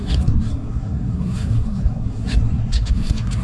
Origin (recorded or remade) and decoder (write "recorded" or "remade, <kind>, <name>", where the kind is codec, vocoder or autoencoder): remade, codec, SNAC